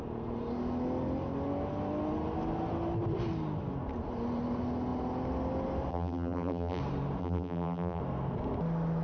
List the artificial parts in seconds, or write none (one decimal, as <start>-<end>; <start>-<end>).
5.9-6.8; 7.2-8.0